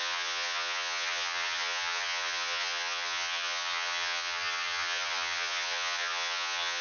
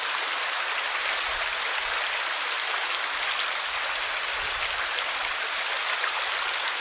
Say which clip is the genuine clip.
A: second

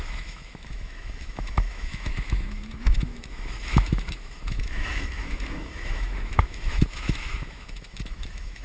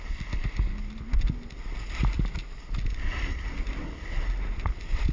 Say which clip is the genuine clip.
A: second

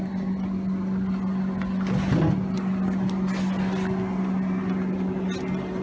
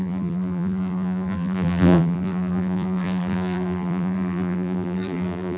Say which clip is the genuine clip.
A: first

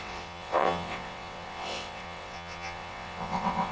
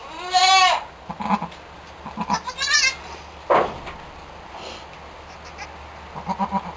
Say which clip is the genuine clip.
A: second